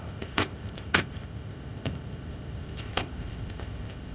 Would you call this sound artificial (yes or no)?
yes